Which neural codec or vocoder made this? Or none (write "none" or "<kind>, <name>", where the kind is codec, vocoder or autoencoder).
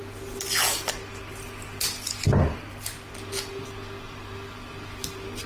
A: none